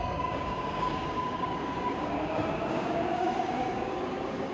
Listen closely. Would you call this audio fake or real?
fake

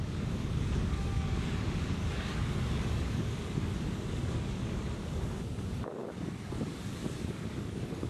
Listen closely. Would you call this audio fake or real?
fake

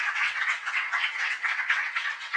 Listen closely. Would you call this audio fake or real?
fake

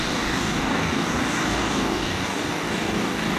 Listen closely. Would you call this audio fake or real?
fake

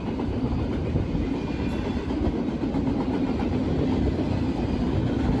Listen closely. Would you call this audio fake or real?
real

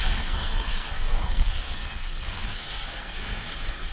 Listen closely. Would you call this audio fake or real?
fake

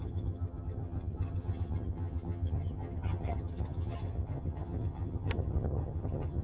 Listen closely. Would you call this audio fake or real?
fake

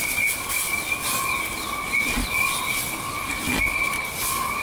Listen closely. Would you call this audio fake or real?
real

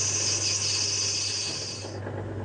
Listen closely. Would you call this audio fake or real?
real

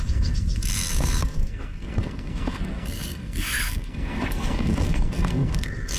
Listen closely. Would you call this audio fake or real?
fake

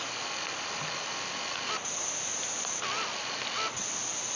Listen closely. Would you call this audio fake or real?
real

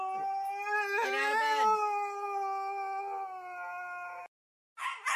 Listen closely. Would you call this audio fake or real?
real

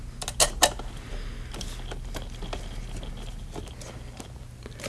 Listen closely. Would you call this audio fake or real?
real